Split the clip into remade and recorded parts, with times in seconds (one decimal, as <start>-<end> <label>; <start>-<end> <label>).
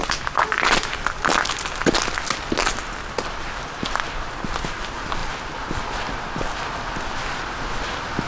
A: 0.0-8.3 recorded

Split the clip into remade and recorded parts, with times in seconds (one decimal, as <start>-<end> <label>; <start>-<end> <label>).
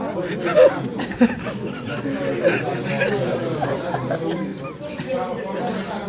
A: 0.0-0.9 recorded; 0.9-2.0 remade; 2.0-6.1 recorded